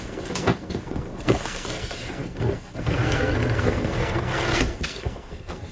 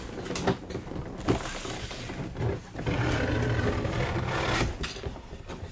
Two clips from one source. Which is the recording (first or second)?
second